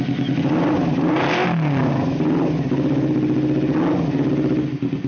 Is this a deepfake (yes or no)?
no